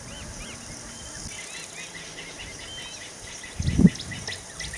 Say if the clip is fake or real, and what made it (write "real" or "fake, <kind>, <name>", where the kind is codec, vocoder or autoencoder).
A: real